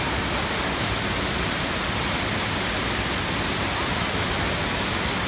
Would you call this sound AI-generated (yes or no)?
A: no